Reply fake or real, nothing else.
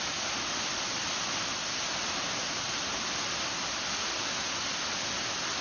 real